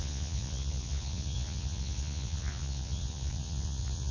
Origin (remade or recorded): remade